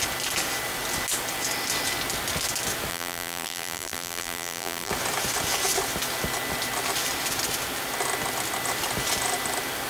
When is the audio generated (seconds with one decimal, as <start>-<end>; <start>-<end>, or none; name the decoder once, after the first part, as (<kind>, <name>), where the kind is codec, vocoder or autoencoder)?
2.9-4.9 (vocoder, BigVGAN v2)